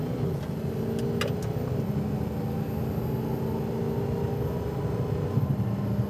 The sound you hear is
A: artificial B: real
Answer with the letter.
B